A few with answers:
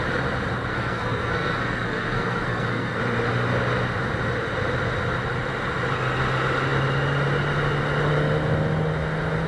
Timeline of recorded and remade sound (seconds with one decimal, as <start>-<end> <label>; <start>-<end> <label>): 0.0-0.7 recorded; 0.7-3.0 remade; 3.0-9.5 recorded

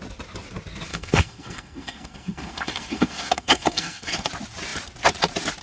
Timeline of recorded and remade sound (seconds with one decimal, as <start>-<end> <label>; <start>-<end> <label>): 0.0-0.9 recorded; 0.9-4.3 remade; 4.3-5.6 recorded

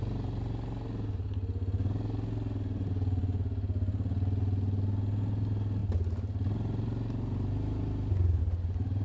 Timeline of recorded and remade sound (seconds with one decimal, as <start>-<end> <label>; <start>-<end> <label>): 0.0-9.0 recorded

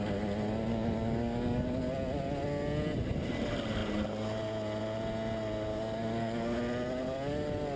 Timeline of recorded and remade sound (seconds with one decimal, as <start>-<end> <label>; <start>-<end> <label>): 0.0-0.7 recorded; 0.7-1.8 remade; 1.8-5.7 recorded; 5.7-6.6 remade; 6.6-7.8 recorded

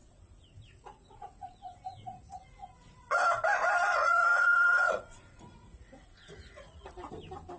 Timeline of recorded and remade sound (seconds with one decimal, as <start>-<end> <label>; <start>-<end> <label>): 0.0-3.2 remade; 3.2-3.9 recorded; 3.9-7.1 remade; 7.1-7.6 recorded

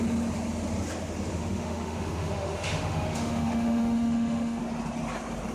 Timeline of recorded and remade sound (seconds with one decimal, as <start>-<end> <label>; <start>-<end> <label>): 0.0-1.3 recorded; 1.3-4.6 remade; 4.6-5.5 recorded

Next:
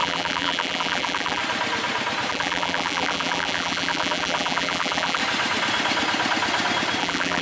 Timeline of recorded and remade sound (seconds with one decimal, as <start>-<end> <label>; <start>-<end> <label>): 0.0-1.4 remade; 1.4-2.3 recorded; 2.3-5.2 remade; 5.2-7.0 recorded; 7.0-7.4 remade